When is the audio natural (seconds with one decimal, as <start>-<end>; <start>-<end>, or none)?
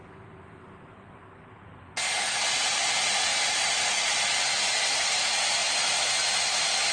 0.0-3.3; 4.7-6.9